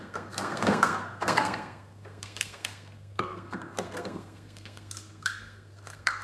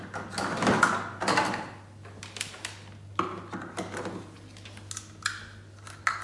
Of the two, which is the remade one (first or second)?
first